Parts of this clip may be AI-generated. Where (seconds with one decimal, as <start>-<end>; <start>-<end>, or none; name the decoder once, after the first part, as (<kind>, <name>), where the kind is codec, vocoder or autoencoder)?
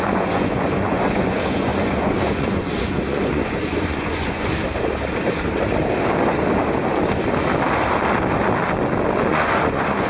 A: 0.0-4.6 (vocoder, Vocos); 9.3-10.1